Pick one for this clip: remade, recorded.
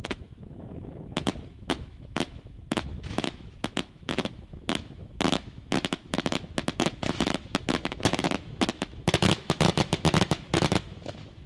remade